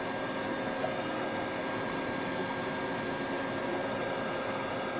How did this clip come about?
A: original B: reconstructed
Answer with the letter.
A